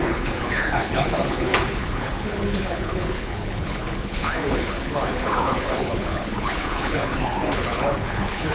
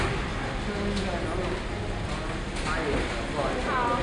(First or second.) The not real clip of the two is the first